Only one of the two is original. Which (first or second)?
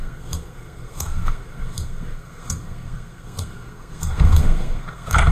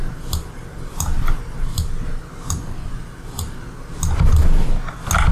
second